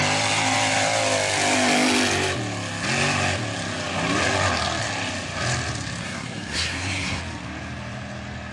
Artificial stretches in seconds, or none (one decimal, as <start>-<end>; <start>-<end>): 6.0-7.2